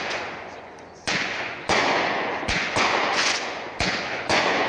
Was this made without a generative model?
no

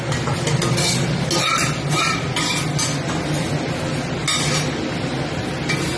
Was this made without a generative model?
yes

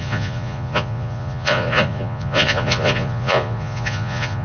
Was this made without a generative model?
no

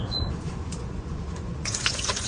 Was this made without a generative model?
no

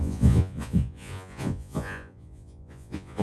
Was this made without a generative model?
no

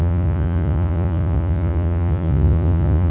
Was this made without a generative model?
no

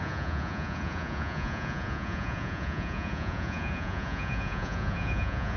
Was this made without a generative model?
no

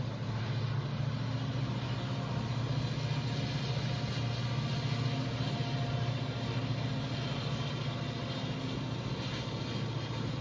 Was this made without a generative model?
yes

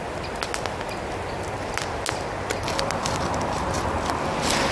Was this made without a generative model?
yes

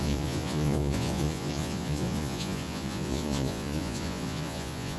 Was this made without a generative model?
no